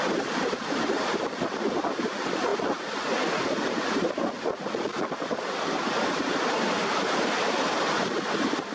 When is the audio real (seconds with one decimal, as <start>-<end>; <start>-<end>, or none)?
0.0-6.0; 7.8-8.7